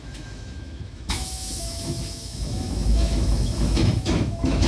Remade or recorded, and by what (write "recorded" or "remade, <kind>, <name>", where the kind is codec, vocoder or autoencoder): remade, autoencoder, DAC-VAE